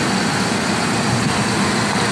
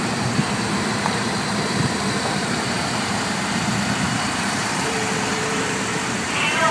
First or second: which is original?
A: first